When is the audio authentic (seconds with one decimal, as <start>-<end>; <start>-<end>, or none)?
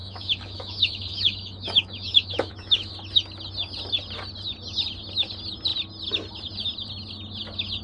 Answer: 2.9-7.8